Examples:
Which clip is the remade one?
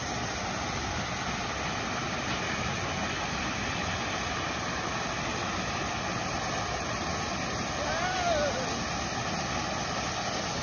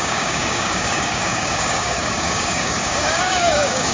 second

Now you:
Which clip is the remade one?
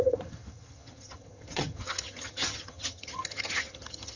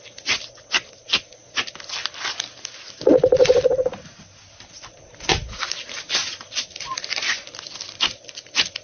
first